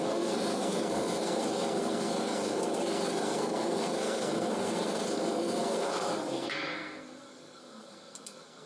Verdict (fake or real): fake